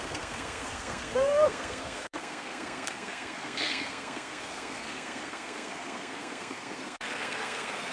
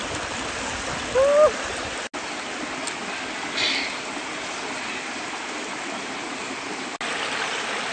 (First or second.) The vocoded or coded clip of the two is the first